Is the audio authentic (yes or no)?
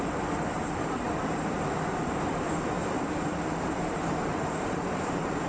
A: no